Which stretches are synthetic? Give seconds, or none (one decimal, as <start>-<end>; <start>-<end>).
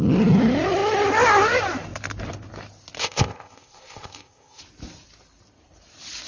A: 3.0-4.6